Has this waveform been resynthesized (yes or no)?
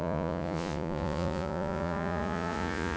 yes